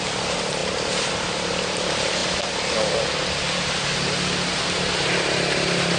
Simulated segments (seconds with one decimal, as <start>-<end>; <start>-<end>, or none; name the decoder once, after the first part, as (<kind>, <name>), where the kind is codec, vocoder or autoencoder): none